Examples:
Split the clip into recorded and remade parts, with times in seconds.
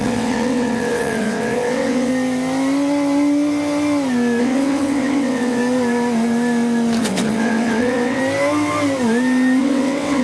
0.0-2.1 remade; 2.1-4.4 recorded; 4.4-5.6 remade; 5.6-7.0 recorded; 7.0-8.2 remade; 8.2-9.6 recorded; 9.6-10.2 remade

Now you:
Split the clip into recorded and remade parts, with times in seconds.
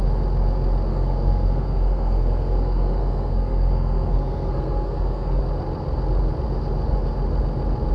0.0-0.9 recorded; 0.9-5.4 remade; 5.4-7.9 recorded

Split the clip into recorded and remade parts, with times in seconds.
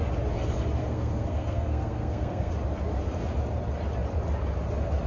0.0-0.8 recorded; 0.8-2.5 remade; 2.5-5.1 recorded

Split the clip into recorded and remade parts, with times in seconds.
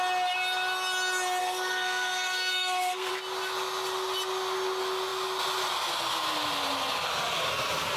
0.0-1.4 recorded; 1.4-3.1 remade; 3.1-8.0 recorded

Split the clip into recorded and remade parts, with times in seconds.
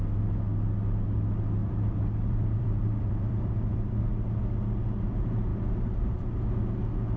0.0-1.6 recorded; 1.6-4.0 remade; 4.0-5.5 recorded; 5.5-6.2 remade; 6.2-7.2 recorded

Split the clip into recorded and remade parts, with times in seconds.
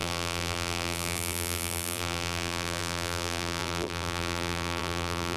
0.0-5.4 remade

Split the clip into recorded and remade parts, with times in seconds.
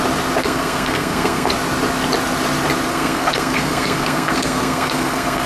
0.0-0.4 recorded; 0.4-1.5 remade; 1.5-2.9 recorded; 2.9-5.5 remade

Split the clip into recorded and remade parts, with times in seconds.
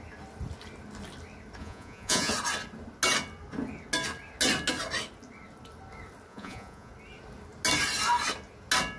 0.0-1.6 recorded; 1.6-2.3 remade; 2.3-6.3 recorded; 6.3-6.9 remade; 6.9-9.0 recorded